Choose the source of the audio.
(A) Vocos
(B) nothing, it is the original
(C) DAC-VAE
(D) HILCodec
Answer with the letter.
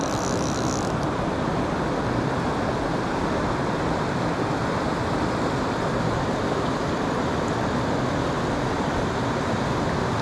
B